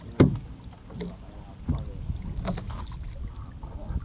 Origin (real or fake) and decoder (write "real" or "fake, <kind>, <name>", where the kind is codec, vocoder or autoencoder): real